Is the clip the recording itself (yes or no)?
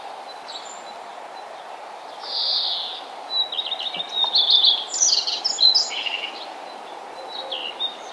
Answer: yes